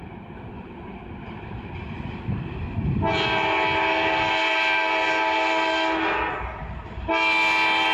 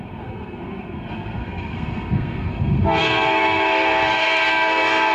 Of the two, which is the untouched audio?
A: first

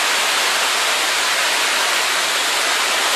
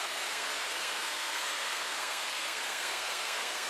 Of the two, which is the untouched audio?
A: first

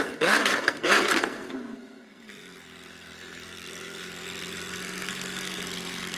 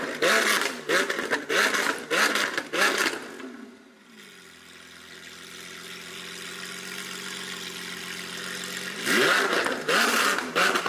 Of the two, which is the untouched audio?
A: second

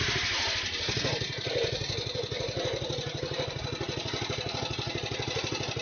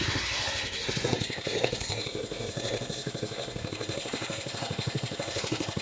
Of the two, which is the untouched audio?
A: first